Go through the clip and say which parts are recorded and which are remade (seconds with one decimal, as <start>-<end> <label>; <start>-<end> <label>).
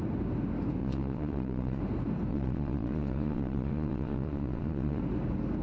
0.0-0.8 recorded; 0.8-1.8 remade; 1.8-2.3 recorded; 2.3-5.0 remade; 5.0-5.6 recorded